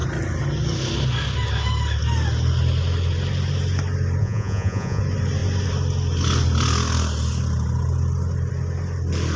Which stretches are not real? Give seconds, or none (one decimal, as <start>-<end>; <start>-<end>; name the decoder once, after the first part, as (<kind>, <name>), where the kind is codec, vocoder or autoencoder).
4.2-5.0 (vocoder, Vocos)